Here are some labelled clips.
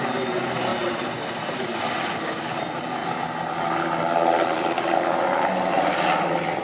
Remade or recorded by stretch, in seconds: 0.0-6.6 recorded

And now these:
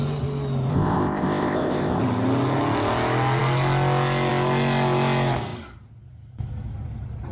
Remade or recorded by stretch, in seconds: 0.0-0.7 recorded; 0.7-2.0 remade; 2.0-7.3 recorded

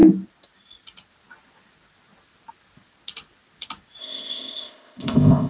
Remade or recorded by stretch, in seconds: 0.0-4.0 recorded; 4.0-5.5 remade

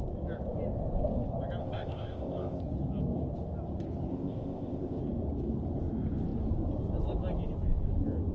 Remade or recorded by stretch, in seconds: 0.0-1.6 recorded; 1.6-2.6 remade; 2.6-4.1 recorded; 4.1-5.0 remade; 5.0-8.3 recorded

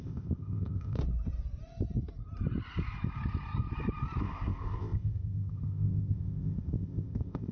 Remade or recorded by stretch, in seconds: 0.0-1.0 remade; 1.0-4.2 recorded; 4.2-7.5 remade